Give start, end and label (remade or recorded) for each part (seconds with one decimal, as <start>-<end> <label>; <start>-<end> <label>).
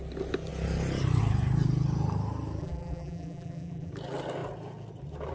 0.0-2.6 recorded; 2.6-3.9 remade; 3.9-5.3 recorded